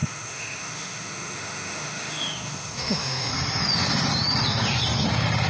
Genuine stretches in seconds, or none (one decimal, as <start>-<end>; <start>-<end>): 3.3-5.5